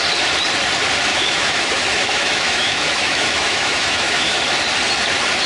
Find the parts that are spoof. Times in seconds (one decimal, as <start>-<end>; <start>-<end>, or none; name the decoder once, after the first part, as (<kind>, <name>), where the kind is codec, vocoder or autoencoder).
1.1-4.4 (autoencoder, DAC-VAE)